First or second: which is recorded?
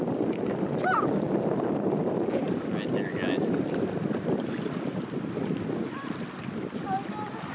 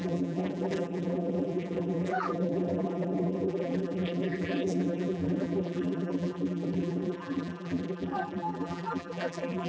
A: first